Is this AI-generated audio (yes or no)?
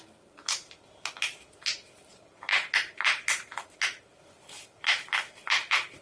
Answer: no